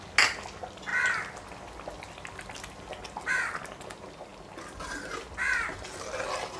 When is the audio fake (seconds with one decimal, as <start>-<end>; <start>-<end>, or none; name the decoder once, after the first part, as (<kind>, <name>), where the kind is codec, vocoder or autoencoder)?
none